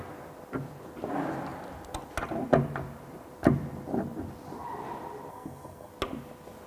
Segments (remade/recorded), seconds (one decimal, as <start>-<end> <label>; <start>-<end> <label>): 0.0-5.3 recorded; 5.3-5.9 remade; 5.9-6.7 recorded